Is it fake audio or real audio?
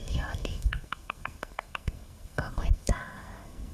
fake